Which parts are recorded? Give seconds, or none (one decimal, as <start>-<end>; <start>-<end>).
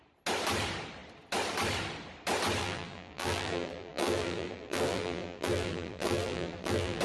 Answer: 0.0-2.6